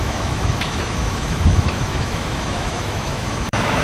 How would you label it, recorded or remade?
remade